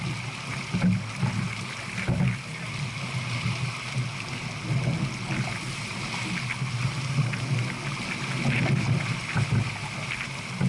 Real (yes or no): yes